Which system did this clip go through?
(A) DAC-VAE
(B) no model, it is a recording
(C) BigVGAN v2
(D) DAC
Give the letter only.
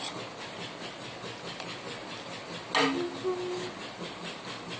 B